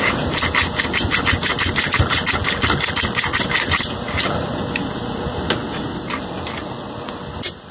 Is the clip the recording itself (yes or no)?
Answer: yes